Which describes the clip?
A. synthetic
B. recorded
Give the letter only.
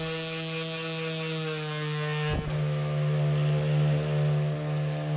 B